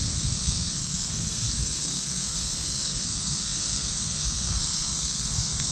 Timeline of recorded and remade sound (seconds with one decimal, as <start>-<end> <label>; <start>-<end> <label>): 0.0-5.7 remade